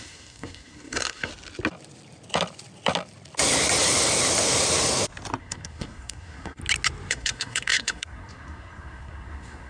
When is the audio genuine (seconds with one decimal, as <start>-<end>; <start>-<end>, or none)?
1.3-5.4; 6.6-7.1